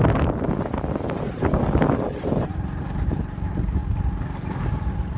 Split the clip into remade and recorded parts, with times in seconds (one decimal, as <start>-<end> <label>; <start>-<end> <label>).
0.0-2.5 recorded; 2.5-3.2 remade; 3.2-5.2 recorded